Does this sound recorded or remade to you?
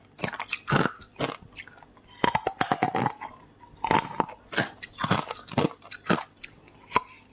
recorded